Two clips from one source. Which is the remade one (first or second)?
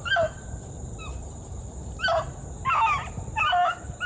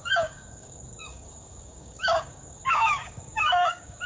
second